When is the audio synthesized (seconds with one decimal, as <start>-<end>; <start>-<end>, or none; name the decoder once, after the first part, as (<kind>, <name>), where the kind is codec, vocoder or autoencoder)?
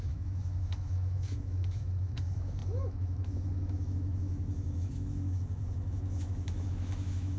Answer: 0.0-7.4 (autoencoder, DAC-VAE)